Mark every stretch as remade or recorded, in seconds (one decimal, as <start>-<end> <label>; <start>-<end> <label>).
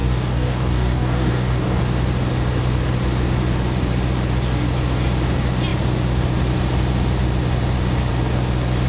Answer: 0.0-1.8 remade; 1.8-8.9 recorded